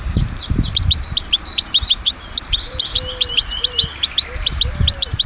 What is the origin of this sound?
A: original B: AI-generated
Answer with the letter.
B